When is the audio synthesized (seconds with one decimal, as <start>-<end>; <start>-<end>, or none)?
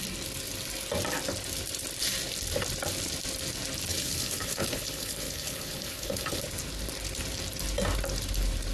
3.9-6.4